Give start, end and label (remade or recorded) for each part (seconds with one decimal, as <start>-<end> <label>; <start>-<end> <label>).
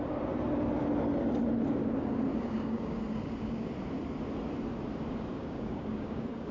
0.0-2.3 recorded; 2.3-3.7 remade; 3.7-5.3 recorded; 5.3-6.5 remade